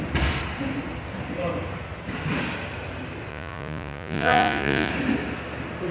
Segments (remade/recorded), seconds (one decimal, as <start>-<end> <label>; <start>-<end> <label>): 0.0-3.3 recorded; 3.3-4.9 remade; 4.9-5.9 recorded